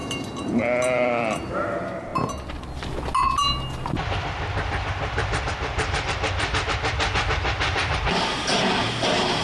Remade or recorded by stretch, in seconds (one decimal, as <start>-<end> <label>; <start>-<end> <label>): 0.0-1.5 remade; 1.5-7.8 recorded; 7.8-8.4 remade; 8.4-9.4 recorded